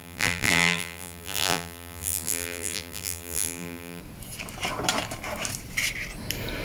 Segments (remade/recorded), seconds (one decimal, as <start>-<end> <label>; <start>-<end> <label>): 0.0-4.0 remade; 4.0-6.6 recorded